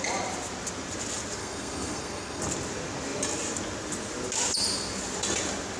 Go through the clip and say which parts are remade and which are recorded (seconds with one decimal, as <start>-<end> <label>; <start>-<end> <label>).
0.0-1.4 recorded; 1.4-2.4 remade; 2.4-5.8 recorded